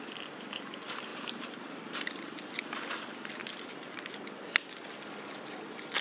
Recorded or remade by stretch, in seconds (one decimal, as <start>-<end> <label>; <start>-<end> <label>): 0.0-1.1 recorded; 1.1-2.5 remade; 2.5-3.4 recorded; 3.4-4.1 remade; 4.1-6.0 recorded